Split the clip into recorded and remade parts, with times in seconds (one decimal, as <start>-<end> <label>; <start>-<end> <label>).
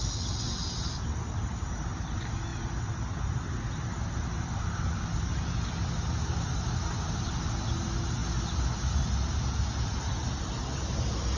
0.0-11.4 recorded